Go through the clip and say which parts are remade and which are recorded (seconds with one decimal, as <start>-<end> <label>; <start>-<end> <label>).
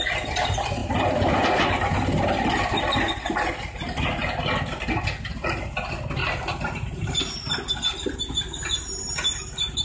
0.0-9.8 recorded